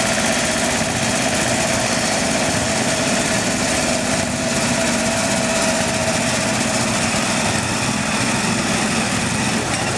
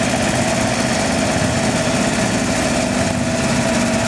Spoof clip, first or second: first